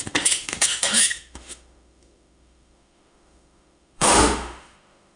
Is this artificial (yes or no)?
yes